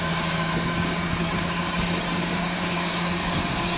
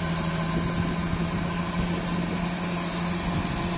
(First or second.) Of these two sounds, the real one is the second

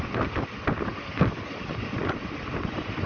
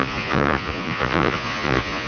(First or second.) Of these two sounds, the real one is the first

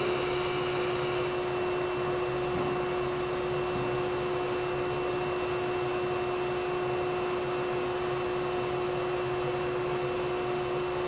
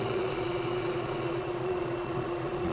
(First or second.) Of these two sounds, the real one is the first